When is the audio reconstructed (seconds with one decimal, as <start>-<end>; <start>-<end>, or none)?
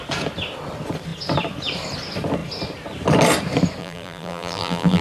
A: 3.8-5.0